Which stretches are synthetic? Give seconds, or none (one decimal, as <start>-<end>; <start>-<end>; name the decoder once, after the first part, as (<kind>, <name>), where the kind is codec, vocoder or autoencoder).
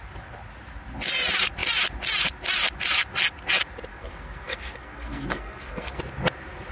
3.9-6.0 (codec, SNAC)